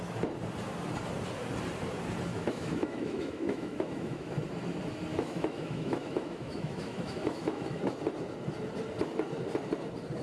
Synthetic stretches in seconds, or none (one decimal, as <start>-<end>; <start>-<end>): 2.3-4.3; 5.1-7.8